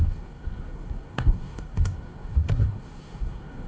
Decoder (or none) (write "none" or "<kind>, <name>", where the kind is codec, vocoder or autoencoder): codec, SNAC